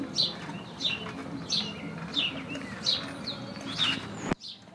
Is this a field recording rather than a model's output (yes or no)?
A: yes